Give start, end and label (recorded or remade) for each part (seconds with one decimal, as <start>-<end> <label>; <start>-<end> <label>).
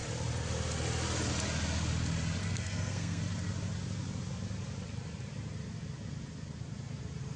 0.0-2.4 recorded; 2.4-3.2 remade; 3.2-7.4 recorded